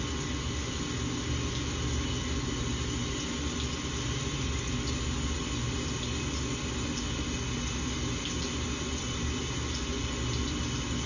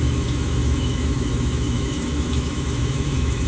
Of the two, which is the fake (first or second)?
second